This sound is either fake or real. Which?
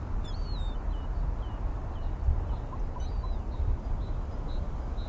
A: real